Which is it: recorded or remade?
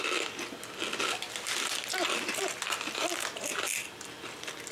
recorded